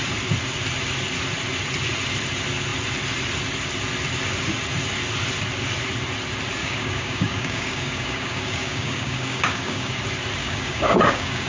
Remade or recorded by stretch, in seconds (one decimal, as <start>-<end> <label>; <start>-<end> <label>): 0.0-6.6 recorded; 6.6-10.0 remade; 10.0-10.4 recorded; 10.4-11.5 remade